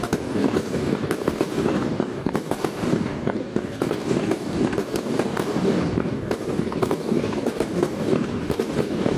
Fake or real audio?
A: fake